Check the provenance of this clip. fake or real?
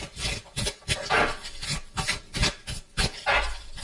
real